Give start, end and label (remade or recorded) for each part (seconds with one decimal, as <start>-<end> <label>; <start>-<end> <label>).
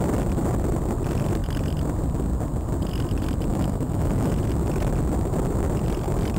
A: 0.0-3.5 recorded; 3.5-4.3 remade; 4.3-6.4 recorded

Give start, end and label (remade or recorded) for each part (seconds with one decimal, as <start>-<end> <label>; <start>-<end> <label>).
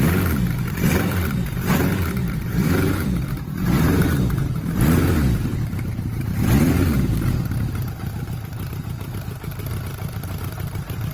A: 0.0-2.2 recorded; 2.2-4.8 remade; 4.8-5.5 recorded; 5.5-8.1 remade; 8.1-11.1 recorded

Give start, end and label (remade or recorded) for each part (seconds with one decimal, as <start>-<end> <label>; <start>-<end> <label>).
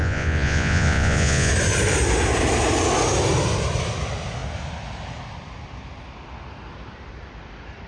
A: 0.0-1.5 remade; 1.5-7.9 recorded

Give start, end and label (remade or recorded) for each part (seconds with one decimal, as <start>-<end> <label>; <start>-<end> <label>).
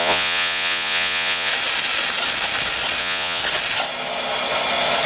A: 0.0-1.5 remade; 1.5-3.0 recorded; 3.0-3.4 remade; 3.4-5.1 recorded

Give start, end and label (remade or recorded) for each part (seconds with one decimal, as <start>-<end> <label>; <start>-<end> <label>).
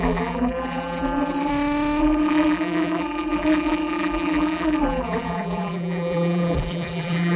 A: 0.0-1.5 remade; 1.5-2.0 recorded; 2.0-7.4 remade